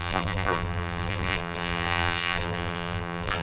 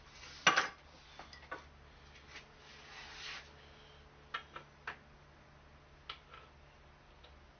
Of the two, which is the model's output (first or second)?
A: first